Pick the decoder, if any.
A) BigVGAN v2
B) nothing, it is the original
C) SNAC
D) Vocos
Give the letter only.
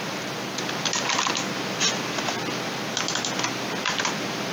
B